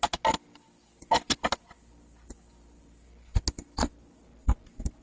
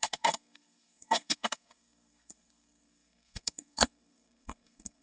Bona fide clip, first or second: first